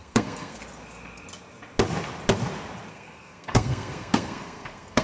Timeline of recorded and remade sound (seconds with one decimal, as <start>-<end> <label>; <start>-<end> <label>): 0.0-0.6 remade; 0.6-2.9 recorded; 2.9-5.0 remade